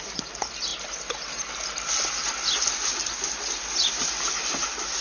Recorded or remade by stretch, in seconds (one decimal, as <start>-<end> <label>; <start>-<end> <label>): 0.0-5.0 recorded